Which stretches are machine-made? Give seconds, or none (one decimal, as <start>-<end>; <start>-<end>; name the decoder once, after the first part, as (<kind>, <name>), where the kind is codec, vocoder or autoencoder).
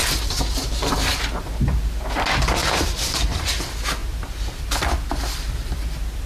2.6-3.4 (vocoder, BigVGAN v2); 4.0-4.8